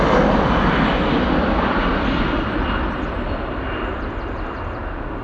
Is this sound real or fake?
real